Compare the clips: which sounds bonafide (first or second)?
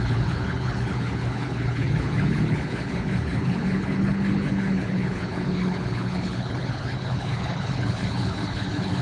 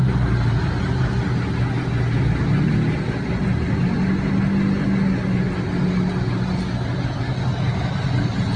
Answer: second